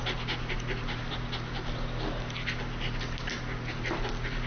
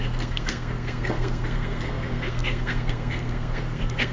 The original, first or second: first